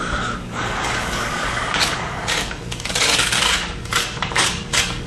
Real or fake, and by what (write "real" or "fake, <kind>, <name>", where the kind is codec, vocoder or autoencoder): fake, codec, DAC